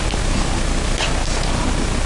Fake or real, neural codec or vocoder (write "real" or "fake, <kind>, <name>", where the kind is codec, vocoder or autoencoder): real